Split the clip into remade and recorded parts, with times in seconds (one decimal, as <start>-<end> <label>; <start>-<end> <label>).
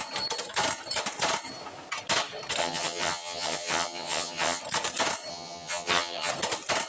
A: 0.0-2.6 recorded; 2.6-4.6 remade; 4.6-5.3 recorded; 5.3-6.3 remade; 6.3-6.9 recorded